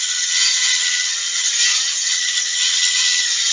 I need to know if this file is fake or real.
fake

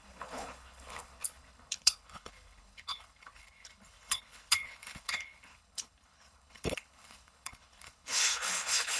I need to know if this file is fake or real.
fake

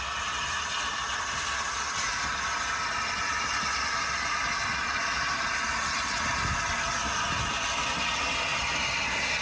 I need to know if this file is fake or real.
real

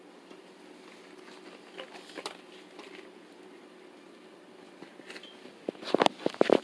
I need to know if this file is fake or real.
real